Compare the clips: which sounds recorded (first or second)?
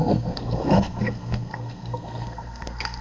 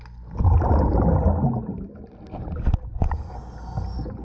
second